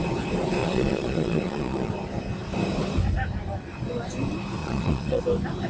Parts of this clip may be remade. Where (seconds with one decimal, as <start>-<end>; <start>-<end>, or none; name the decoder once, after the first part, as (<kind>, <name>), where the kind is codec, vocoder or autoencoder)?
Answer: 0.6-1.9 (vocoder, Vocos); 4.6-5.2